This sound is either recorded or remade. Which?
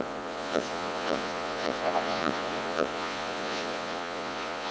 remade